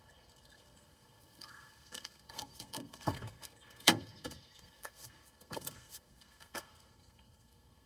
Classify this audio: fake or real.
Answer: fake